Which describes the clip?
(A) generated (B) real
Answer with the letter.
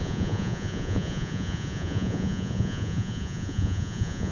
A